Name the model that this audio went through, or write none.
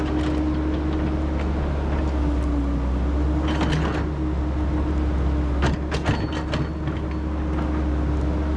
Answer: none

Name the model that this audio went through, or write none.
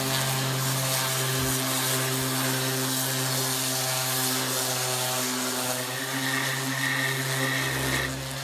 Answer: none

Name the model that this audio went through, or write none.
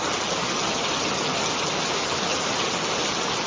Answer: none